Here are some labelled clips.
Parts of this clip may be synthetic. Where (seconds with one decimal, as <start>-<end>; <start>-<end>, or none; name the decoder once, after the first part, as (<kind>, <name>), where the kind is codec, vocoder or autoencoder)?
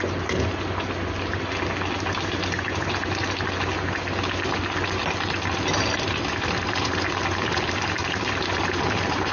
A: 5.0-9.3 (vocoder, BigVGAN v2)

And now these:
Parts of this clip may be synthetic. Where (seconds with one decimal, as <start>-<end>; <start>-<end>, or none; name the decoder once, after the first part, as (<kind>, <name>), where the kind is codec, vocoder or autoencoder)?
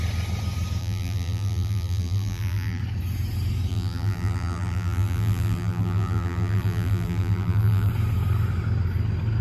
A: 0.8-2.8 (vocoder, BigVGAN v2); 3.7-7.9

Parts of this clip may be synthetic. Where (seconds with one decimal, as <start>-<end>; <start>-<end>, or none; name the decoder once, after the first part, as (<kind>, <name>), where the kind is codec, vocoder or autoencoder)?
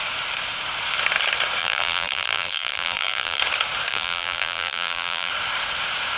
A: 1.6-3.4 (vocoder, BigVGAN v2); 3.9-5.3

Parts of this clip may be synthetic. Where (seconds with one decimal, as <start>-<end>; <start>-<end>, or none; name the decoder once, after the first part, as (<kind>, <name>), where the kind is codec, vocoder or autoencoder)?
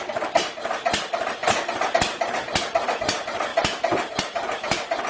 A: 1.4-3.0 (vocoder, BigVGAN v2); 3.5-4.2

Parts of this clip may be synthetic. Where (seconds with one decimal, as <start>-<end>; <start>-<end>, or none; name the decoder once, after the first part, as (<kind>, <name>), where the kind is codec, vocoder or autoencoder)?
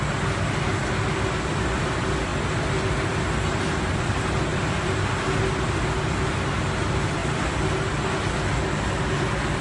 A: none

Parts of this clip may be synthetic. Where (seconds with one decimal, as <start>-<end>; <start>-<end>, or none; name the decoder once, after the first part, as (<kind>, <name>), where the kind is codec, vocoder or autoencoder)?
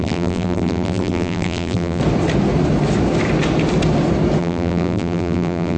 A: 0.0-2.0 (vocoder, BigVGAN v2); 4.4-5.8